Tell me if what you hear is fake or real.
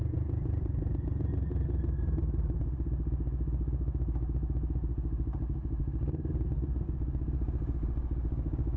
real